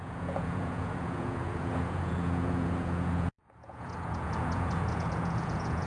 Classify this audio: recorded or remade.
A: remade